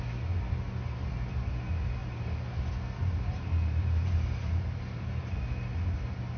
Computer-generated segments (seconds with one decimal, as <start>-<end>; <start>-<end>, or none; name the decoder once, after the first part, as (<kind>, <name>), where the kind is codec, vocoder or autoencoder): 2.0-2.6 (vocoder, BigVGAN v2); 3.0-5.1